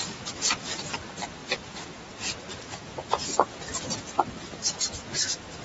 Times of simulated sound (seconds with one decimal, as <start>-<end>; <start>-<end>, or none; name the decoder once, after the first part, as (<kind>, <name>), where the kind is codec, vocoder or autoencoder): none